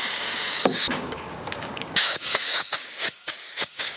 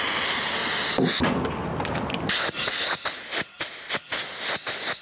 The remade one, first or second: first